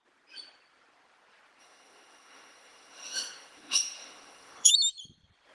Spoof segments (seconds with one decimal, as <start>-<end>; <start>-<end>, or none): 1.6-4.7